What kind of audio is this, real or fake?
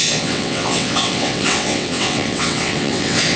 fake